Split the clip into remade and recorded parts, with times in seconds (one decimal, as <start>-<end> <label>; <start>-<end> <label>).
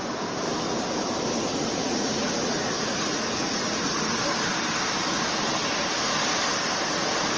0.0-1.5 recorded; 1.5-4.1 remade; 4.1-7.4 recorded